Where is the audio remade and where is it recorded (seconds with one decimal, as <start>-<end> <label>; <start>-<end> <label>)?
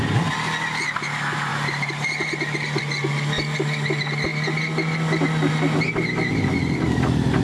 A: 0.0-1.5 recorded; 1.5-2.8 remade; 2.8-7.4 recorded